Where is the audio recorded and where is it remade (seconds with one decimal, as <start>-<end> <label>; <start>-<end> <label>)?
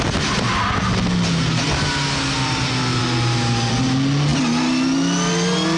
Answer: 0.0-5.8 recorded